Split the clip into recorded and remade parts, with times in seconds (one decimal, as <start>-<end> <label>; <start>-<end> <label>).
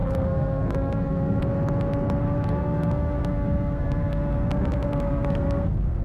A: 0.0-1.4 remade; 1.4-2.2 recorded; 2.2-6.0 remade